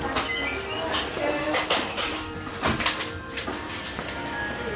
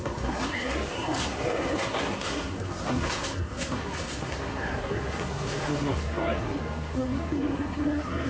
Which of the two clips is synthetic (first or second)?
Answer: second